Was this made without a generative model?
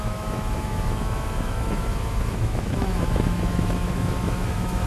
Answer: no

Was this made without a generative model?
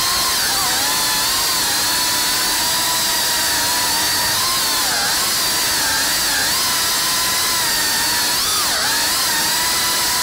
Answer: yes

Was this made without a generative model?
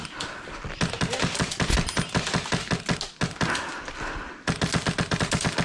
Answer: yes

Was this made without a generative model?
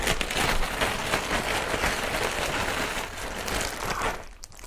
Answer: yes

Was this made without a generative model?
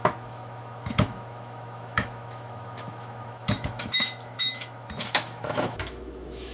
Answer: no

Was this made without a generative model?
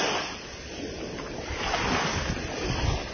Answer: yes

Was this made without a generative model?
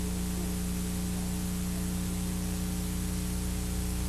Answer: yes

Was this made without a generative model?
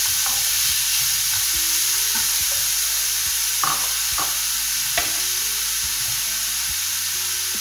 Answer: yes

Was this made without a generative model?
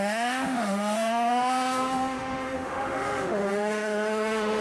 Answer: no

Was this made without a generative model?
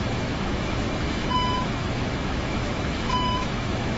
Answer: no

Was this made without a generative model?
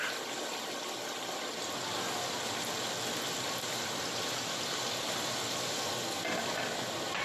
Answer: yes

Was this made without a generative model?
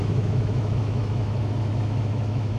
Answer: no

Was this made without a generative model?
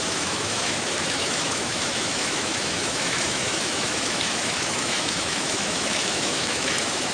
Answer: no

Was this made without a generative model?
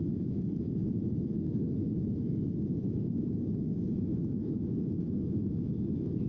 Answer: no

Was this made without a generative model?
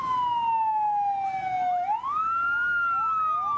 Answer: yes